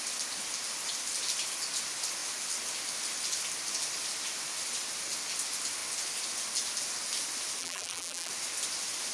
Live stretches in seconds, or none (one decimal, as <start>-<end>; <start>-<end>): 0.0-7.6; 8.3-9.1